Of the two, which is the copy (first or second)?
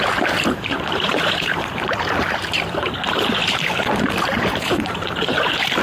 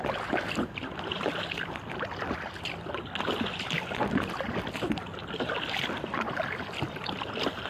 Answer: first